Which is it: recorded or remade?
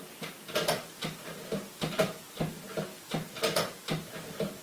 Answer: recorded